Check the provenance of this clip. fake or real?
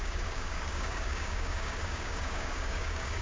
fake